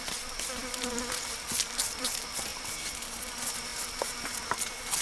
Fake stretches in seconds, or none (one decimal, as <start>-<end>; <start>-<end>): 0.0-2.5; 3.3-3.7; 4.4-5.0